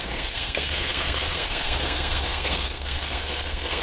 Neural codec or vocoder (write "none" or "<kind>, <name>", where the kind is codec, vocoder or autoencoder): codec, SNAC